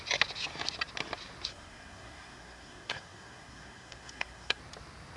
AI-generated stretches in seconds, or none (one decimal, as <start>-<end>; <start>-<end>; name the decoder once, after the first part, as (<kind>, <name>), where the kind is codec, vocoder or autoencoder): 1.5-4.6 (codec, SNAC)